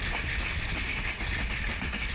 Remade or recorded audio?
recorded